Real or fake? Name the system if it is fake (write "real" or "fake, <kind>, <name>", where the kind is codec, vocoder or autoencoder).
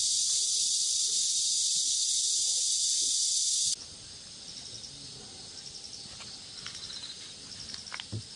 real